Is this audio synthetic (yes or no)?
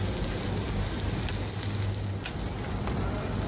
no